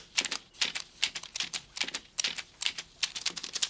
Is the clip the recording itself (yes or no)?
yes